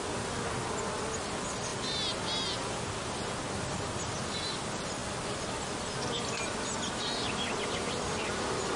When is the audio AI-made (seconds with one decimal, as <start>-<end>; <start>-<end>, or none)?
none